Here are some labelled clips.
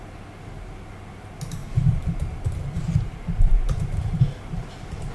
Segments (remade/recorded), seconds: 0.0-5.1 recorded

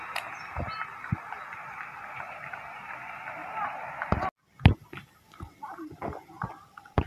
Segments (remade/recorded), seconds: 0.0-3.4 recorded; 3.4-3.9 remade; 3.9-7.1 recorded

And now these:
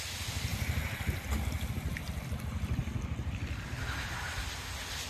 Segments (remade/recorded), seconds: 0.0-5.1 recorded

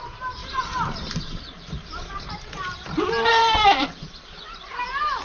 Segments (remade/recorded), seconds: 0.0-0.4 recorded; 0.4-2.5 remade; 2.5-3.4 recorded; 3.4-5.2 remade

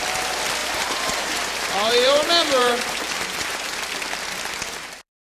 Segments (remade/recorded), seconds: 0.0-0.6 recorded; 0.6-3.8 remade; 3.8-5.3 recorded

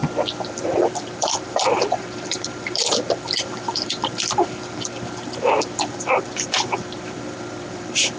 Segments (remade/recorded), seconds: 0.0-0.5 recorded; 0.5-8.2 remade